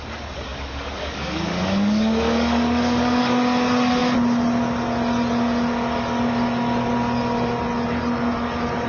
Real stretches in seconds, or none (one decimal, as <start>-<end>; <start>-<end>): 0.0-0.5; 3.2-8.9